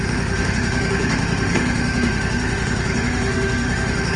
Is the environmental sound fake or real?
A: fake